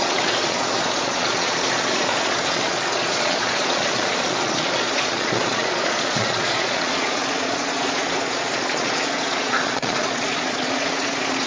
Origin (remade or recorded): remade